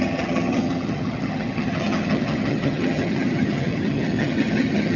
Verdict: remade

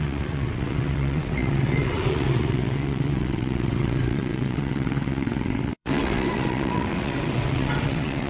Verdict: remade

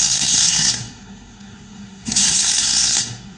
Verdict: remade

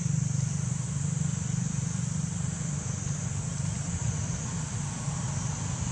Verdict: remade